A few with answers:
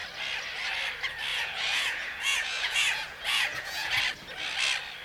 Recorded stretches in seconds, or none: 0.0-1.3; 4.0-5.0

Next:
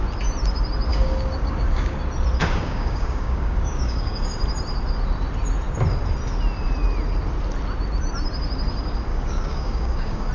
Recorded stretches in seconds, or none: 0.0-0.9; 2.0-2.4; 4.4-9.1

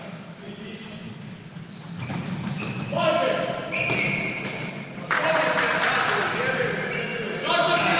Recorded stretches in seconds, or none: 0.0-8.0

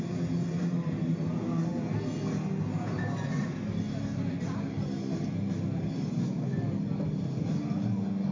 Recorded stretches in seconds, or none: 0.0-8.3

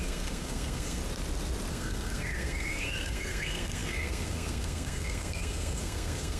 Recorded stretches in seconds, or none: 1.0-1.7

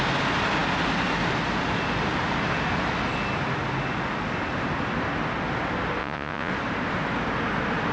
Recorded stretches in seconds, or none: 0.0-6.0; 6.5-7.9

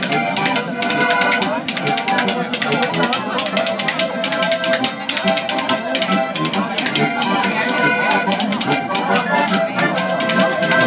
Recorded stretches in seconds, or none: 0.0-7.2; 8.8-10.9